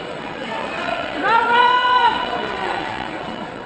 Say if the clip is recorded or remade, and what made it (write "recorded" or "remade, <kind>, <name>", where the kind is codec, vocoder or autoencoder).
remade, vocoder, WaveNeXt